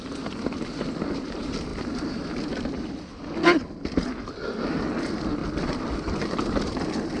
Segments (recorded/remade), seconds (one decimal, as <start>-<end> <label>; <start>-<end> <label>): 0.0-1.7 remade; 1.7-2.5 recorded; 2.5-3.1 remade; 3.1-5.0 recorded; 5.0-5.4 remade; 5.4-5.9 recorded; 5.9-7.2 remade